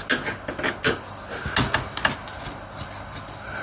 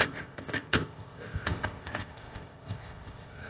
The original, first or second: first